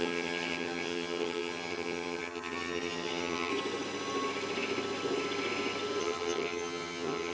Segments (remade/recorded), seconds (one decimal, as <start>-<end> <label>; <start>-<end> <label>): 0.0-3.5 remade; 3.5-6.0 recorded; 6.0-7.3 remade